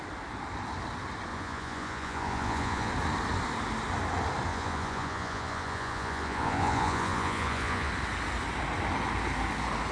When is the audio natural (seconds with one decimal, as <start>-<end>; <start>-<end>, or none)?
0.0-1.3; 2.9-4.5; 7.9-9.9

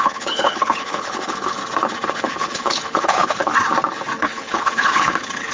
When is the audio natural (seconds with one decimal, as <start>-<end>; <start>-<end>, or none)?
1.6-2.1; 3.5-4.2

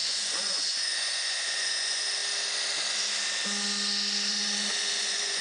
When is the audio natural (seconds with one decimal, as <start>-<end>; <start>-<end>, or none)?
2.2-4.3

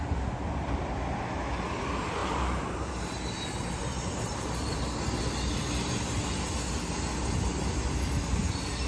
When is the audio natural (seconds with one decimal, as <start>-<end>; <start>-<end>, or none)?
0.0-2.2; 4.8-8.9